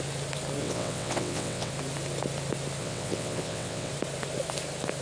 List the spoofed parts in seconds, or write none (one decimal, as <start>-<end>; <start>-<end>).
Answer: 0.6-1.7; 2.8-3.9

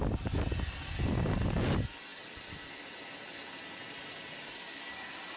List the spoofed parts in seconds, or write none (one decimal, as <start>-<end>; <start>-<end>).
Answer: none

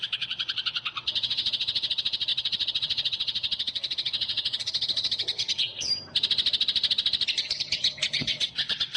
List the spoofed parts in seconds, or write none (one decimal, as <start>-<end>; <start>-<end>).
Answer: 0.0-5.9; 8.1-9.0

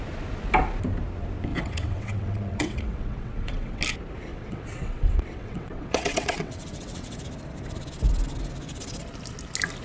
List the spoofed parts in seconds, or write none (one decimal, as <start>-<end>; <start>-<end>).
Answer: 1.5-3.8; 4.3-7.2

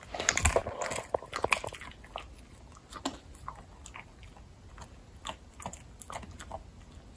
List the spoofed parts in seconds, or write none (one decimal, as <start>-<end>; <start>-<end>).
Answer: none